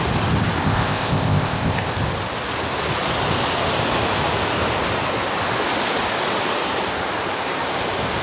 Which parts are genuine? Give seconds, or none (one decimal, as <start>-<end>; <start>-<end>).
0.0-0.6; 2.0-8.2